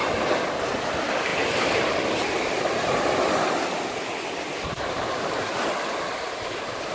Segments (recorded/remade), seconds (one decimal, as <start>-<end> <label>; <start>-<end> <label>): 0.0-6.9 recorded